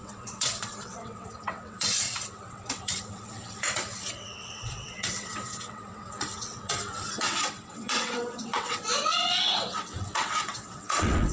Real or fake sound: fake